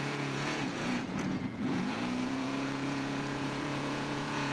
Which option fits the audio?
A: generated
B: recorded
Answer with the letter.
A